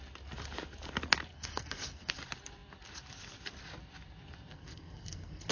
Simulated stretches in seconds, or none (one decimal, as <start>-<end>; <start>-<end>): 1.3-2.1; 4.5-5.5